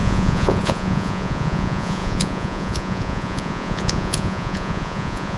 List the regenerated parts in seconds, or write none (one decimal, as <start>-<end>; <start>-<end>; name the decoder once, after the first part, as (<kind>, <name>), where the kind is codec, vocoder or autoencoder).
0.0-5.4 (vocoder, Vocos)